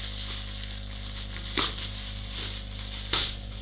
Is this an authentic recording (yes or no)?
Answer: yes